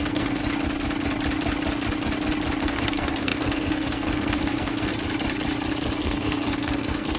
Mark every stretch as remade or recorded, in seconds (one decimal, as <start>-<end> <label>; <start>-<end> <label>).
0.0-0.4 remade; 0.4-2.6 recorded; 2.6-4.9 remade; 4.9-6.0 recorded; 6.0-7.2 remade

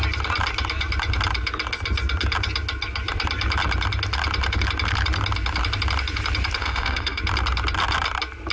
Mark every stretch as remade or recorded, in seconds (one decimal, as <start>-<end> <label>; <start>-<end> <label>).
0.0-6.6 recorded; 6.6-7.2 remade; 7.2-8.5 recorded

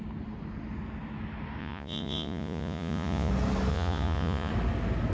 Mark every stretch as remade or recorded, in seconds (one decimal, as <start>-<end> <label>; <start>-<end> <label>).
0.0-1.6 recorded; 1.6-3.3 remade; 3.3-3.7 recorded; 3.7-4.5 remade; 4.5-5.1 recorded